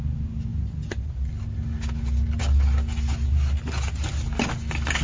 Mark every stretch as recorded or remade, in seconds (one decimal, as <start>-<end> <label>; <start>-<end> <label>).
0.0-5.0 recorded